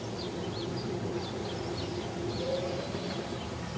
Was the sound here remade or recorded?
recorded